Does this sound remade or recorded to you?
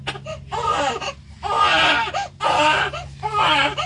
recorded